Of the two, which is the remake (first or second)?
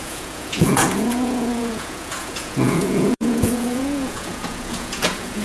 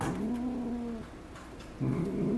first